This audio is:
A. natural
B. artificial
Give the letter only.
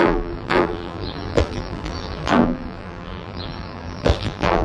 B